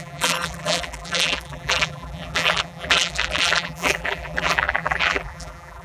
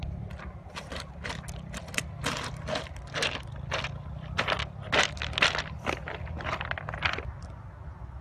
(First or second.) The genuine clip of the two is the second